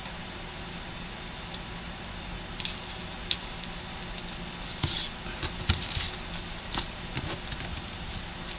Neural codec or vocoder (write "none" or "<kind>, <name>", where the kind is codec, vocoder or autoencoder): none